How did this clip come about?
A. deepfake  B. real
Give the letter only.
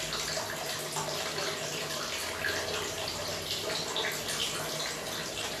B